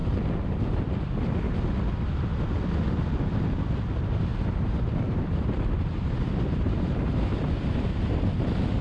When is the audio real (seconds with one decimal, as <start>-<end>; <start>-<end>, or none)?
0.9-4.3; 8.2-8.8